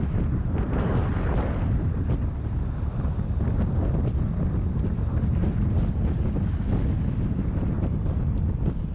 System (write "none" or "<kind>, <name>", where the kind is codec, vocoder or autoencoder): none